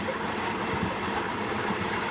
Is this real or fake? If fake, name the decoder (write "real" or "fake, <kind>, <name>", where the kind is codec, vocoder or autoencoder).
real